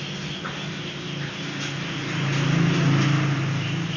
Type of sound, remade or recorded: recorded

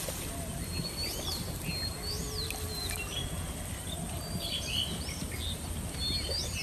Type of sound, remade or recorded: recorded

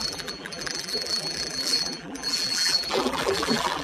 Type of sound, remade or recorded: remade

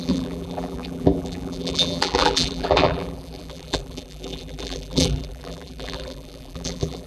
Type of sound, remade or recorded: remade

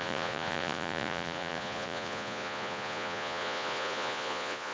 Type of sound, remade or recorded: remade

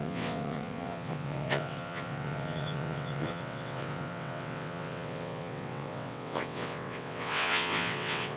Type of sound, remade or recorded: remade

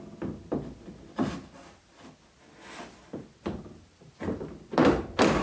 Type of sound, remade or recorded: recorded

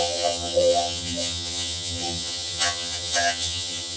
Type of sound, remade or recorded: remade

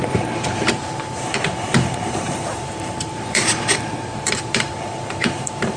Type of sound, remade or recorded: remade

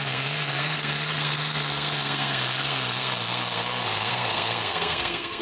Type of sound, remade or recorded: remade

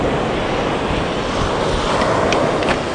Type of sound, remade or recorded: recorded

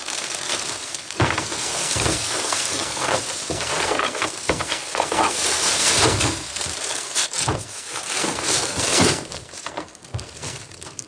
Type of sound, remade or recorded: remade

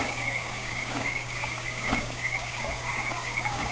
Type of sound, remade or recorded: remade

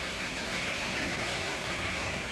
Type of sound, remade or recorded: remade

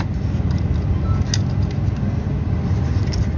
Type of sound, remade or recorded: recorded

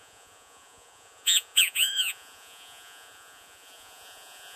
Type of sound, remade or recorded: remade